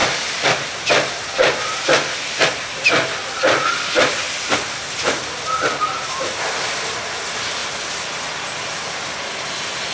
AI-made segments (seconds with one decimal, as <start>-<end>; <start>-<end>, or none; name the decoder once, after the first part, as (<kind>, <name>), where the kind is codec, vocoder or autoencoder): 7.6-9.0 (vocoder, BigVGAN v2)